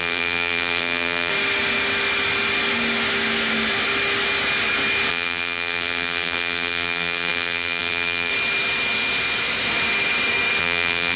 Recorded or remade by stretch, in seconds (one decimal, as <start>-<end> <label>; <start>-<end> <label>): 0.0-1.3 remade; 1.3-5.1 recorded; 5.1-8.3 remade; 8.3-10.6 recorded; 10.6-11.2 remade